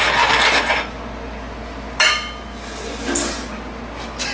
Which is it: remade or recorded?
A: recorded